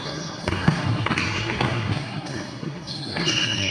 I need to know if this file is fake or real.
fake